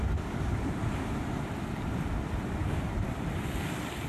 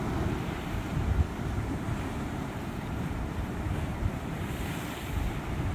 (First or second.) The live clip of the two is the first